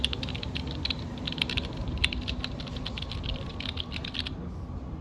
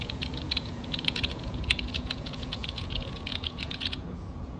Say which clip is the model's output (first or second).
second